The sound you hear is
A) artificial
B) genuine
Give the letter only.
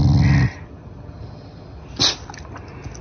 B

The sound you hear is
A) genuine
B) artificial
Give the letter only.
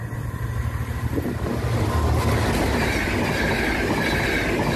A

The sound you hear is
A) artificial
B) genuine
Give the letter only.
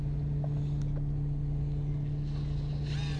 B